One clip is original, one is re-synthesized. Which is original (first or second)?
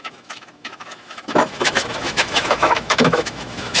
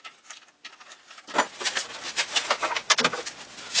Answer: second